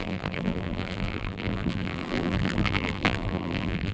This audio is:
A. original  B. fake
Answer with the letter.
B